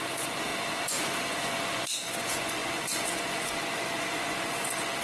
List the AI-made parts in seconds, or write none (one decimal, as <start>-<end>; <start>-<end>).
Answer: 0.0-5.0